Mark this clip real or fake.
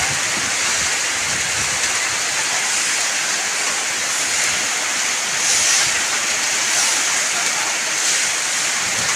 real